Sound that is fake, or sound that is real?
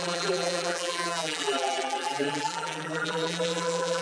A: fake